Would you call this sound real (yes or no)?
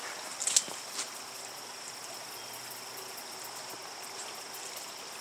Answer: yes